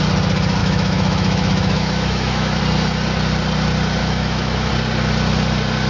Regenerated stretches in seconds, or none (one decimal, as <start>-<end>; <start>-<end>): 0.6-2.6; 4.0-4.7